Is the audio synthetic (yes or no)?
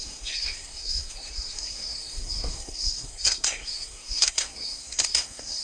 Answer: yes